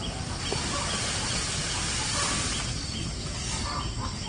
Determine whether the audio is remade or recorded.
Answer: recorded